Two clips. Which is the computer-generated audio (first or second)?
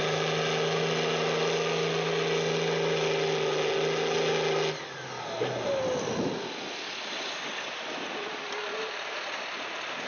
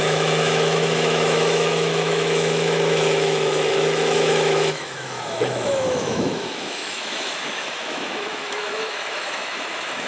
second